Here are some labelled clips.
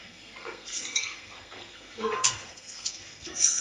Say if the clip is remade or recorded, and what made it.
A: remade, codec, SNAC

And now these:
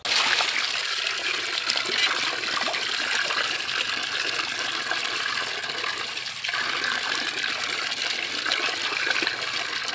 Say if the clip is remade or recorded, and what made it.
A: recorded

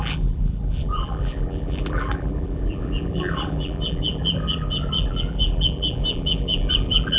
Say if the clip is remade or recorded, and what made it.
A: remade, vocoder, BigVGAN v2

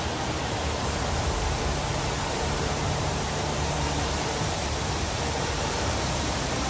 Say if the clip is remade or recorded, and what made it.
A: remade, vocoder, BigVGAN v2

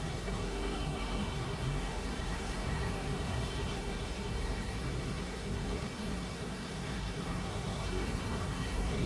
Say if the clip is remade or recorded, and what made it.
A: remade, codec, SNAC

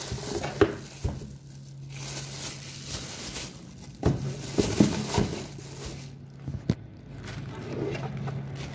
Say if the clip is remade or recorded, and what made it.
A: recorded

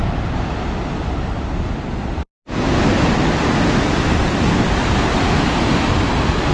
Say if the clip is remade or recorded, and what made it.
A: recorded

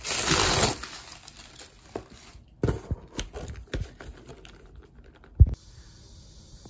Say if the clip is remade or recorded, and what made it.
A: recorded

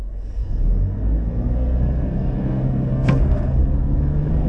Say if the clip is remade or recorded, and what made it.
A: remade, codec, SNAC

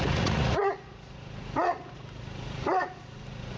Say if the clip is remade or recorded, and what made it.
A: remade, vocoder, Vocos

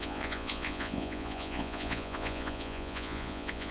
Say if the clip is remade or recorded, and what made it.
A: remade, vocoder, Vocos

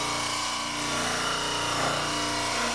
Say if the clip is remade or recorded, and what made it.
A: recorded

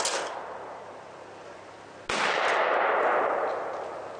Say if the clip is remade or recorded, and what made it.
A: recorded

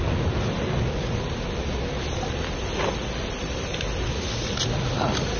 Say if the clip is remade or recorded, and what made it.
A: recorded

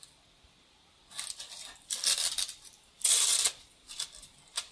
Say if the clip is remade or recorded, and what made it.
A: recorded